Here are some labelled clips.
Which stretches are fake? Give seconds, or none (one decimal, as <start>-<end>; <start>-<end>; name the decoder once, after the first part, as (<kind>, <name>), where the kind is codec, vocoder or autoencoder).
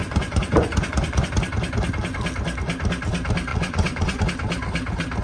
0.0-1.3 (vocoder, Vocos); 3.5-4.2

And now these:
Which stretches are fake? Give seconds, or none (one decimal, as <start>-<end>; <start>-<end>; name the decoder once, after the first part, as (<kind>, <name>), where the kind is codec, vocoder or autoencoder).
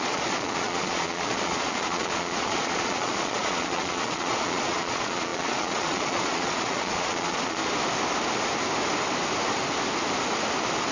0.0-7.6 (vocoder, Vocos)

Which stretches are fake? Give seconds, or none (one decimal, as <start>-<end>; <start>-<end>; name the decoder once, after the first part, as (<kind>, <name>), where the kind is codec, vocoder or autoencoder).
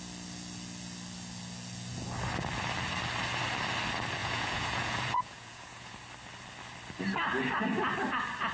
4.2-6.0 (vocoder, Vocos)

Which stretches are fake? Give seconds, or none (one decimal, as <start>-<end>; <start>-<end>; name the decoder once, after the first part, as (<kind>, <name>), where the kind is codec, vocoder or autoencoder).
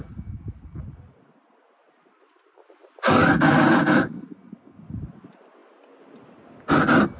none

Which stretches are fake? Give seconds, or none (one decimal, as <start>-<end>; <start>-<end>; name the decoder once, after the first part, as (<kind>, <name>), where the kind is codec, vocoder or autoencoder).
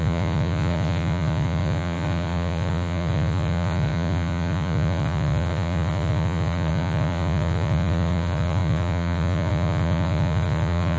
0.0-11.0 (vocoder, Vocos)